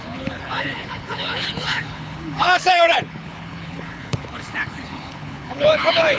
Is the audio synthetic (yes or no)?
yes